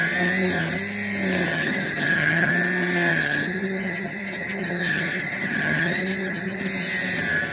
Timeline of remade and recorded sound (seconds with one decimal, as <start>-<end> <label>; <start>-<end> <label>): 0.0-1.5 recorded; 1.5-2.5 remade; 2.5-3.1 recorded; 3.1-6.6 remade; 6.6-7.5 recorded